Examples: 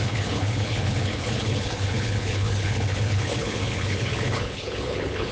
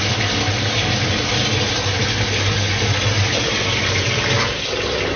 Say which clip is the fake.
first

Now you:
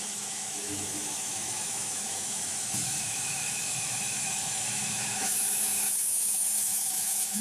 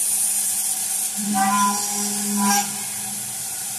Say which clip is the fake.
first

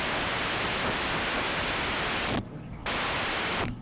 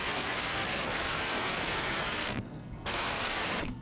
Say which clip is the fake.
second